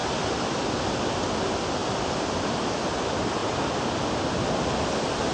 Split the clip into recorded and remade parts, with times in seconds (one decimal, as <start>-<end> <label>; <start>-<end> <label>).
0.0-0.6 remade; 0.6-1.8 recorded; 1.8-2.8 remade; 2.8-5.3 recorded